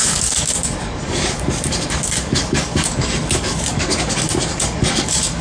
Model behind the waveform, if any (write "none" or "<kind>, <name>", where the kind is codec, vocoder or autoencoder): codec, DAC